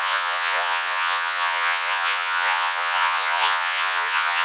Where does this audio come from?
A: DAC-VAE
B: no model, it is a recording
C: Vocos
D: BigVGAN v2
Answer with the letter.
C